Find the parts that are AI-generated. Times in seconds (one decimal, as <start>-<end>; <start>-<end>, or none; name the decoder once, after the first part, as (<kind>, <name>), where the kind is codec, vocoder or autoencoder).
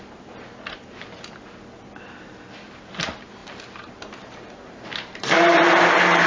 3.4-6.3 (vocoder, BigVGAN v2)